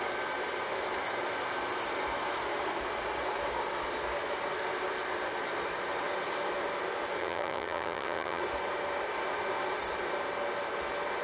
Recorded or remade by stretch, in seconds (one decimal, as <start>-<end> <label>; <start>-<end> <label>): 0.0-7.2 recorded; 7.2-8.4 remade; 8.4-11.2 recorded